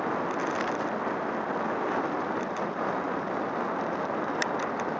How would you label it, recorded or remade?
recorded